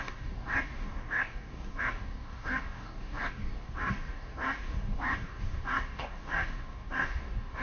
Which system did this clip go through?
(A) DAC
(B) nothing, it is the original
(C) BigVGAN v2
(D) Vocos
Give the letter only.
A